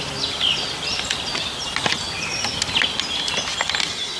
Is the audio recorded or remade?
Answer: recorded